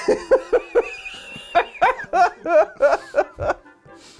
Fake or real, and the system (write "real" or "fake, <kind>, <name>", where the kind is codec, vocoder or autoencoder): real